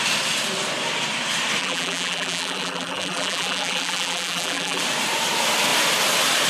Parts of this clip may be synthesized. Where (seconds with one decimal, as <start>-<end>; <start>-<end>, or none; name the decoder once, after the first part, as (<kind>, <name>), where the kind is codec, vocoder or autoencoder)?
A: 1.6-4.8 (vocoder, BigVGAN v2)